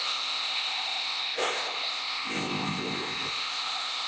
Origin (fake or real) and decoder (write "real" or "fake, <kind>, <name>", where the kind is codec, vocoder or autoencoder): fake, codec, ZipCodec